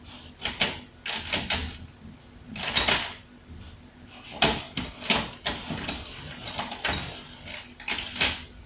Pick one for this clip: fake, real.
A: real